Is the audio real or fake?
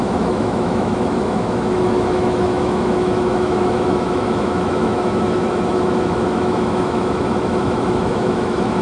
fake